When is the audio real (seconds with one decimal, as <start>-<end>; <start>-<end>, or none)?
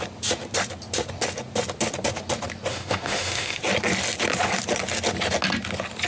0.0-2.7; 3.6-6.1